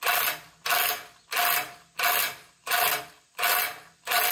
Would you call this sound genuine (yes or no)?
yes